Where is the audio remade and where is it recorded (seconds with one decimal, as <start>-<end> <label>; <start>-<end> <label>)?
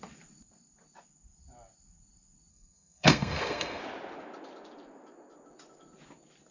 0.0-2.5 recorded; 2.5-3.8 remade; 3.8-6.5 recorded